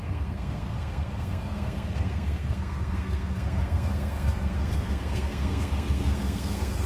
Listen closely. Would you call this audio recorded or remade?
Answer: remade